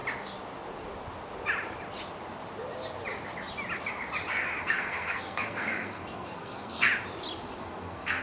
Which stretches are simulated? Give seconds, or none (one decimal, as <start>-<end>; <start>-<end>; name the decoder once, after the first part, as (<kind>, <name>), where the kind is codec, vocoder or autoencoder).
4.6-6.9 (codec, SNAC); 7.6-8.2